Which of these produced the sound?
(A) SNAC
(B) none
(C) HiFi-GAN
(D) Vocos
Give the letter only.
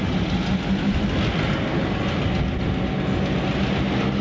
B